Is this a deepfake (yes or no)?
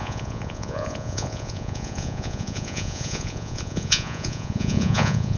yes